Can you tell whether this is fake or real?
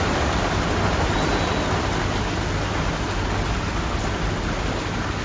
real